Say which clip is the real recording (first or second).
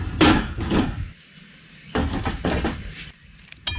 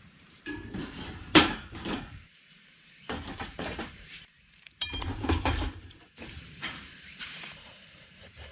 first